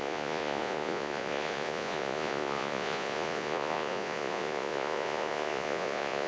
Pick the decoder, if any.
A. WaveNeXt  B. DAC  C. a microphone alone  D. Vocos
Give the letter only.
D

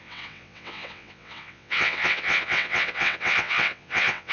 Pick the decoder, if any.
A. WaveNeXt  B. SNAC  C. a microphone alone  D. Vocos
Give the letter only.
A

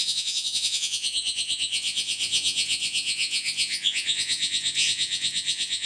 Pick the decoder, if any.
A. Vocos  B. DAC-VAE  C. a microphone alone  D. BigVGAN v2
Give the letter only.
A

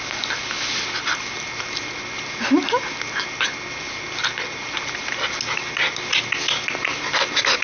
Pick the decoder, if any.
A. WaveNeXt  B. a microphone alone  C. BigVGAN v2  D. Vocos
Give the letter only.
B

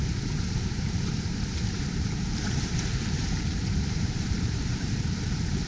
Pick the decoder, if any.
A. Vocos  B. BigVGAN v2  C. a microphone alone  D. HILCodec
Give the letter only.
B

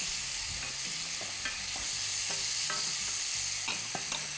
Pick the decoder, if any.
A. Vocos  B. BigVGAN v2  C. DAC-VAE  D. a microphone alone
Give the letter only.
D